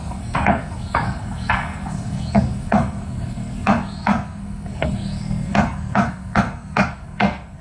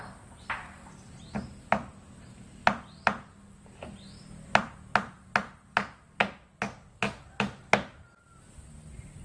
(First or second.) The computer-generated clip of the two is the first